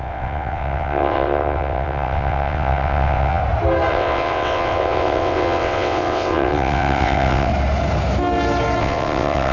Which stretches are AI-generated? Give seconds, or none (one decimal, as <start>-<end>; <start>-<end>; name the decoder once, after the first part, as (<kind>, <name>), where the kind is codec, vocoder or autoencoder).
0.0-3.4 (vocoder, WaveNeXt); 3.9-7.5; 8.8-9.5